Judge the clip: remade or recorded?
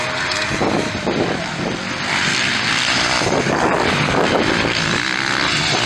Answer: recorded